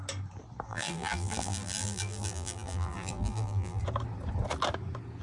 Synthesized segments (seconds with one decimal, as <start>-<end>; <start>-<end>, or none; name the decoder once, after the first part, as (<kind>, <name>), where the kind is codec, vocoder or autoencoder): 0.7-3.8 (vocoder, BigVGAN v2)